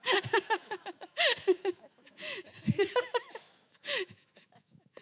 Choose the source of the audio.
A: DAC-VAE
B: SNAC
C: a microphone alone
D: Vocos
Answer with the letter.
A